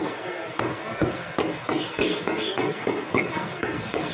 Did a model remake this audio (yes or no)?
yes